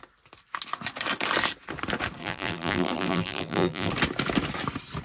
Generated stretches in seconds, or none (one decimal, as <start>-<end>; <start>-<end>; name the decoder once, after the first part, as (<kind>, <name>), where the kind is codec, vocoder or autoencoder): 2.2-3.9 (vocoder, BigVGAN v2)